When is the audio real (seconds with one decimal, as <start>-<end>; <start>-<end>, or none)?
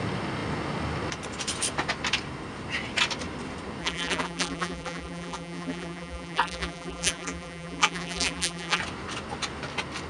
0.0-3.8; 8.8-10.1